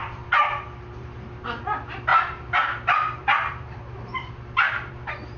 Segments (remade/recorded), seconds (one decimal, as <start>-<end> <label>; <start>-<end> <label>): 0.0-1.4 remade; 1.4-2.1 recorded; 2.1-5.4 remade